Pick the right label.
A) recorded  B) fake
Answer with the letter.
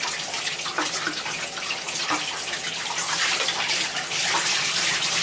A